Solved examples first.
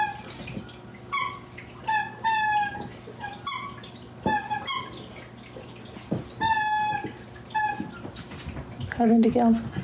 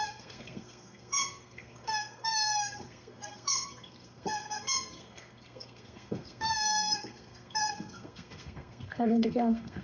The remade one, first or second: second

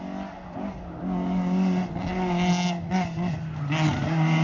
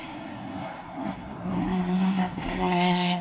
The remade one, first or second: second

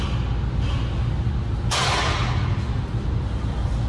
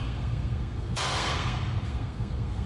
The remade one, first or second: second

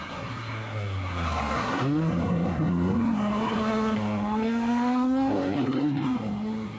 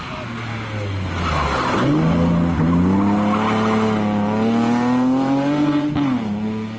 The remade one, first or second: first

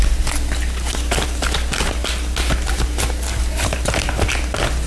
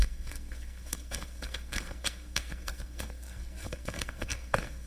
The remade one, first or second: second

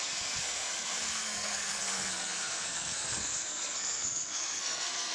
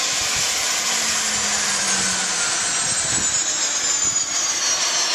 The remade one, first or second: first